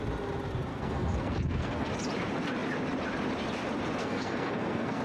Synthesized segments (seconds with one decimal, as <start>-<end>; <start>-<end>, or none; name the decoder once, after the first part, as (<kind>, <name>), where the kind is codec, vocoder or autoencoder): 0.7-1.9 (codec, SNAC); 4.0-5.0